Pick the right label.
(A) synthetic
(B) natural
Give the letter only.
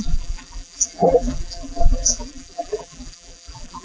A